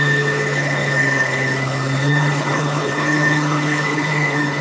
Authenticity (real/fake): fake